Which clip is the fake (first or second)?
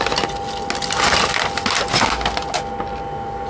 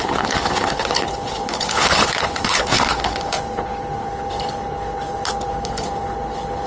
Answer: second